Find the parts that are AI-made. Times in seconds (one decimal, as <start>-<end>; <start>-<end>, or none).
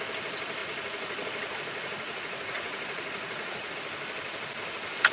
0.6-3.7